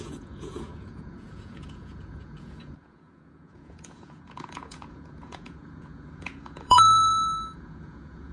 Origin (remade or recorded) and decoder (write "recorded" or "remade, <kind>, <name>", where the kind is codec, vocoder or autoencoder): remade, vocoder, Vocos